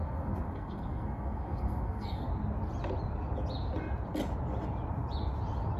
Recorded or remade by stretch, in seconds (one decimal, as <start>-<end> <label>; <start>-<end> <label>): 0.0-2.3 remade; 2.3-5.8 recorded